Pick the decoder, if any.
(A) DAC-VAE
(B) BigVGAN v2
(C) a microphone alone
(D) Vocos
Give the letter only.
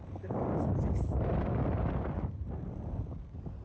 C